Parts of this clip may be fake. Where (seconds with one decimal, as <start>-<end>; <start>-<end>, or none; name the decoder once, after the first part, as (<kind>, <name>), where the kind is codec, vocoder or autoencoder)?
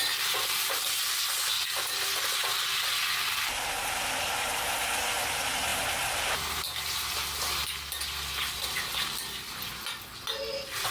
none